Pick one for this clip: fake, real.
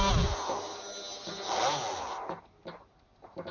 real